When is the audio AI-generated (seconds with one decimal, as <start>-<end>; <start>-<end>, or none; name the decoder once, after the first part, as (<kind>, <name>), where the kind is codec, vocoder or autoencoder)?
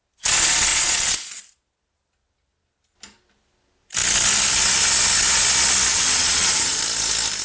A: 0.7-1.4 (vocoder, Vocos); 5.9-6.8